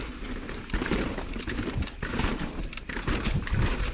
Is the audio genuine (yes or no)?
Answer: no